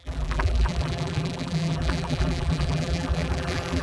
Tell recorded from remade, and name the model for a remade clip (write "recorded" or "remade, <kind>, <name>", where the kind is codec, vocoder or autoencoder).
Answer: remade, vocoder, BigVGAN v2